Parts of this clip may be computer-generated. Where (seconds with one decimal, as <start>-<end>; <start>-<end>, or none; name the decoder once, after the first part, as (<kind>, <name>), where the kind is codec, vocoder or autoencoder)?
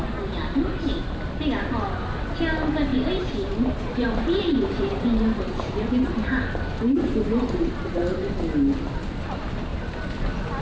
2.9-8.0 (vocoder, BigVGAN v2)